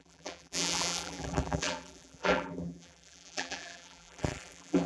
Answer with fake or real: fake